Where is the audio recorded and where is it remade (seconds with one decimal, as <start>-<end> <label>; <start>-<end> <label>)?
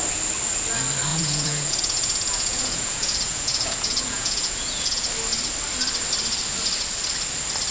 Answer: 0.0-1.1 recorded; 1.1-5.1 remade; 5.1-7.7 recorded